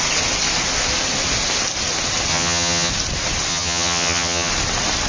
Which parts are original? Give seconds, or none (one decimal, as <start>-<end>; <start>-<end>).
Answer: 0.0-2.3; 2.9-3.5; 4.5-5.1

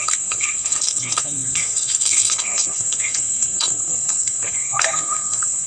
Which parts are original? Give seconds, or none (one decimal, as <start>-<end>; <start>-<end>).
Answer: none